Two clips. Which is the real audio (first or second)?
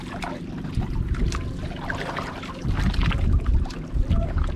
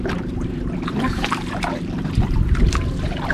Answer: first